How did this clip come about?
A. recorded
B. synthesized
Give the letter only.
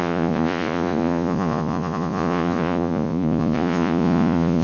B